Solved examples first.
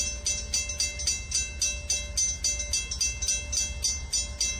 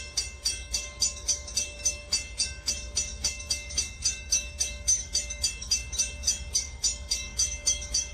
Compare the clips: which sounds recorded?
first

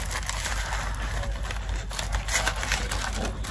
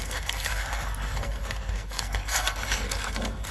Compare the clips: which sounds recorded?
first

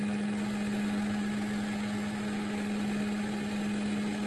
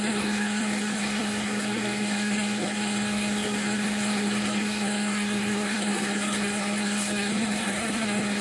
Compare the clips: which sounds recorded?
first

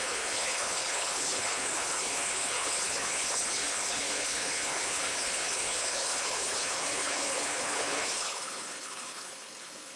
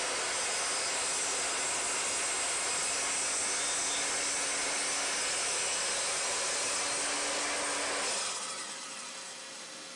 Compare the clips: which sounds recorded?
second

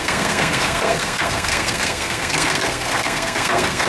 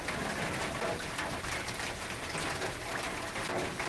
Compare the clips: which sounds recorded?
second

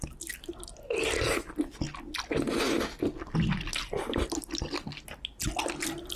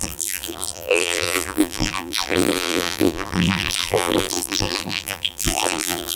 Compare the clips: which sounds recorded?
first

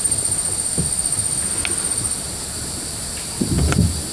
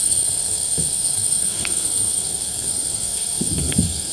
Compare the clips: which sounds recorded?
first